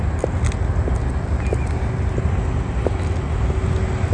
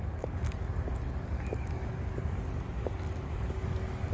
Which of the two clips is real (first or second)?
first